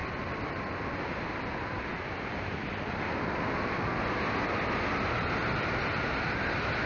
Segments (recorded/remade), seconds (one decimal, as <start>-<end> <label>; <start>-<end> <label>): 0.0-6.9 recorded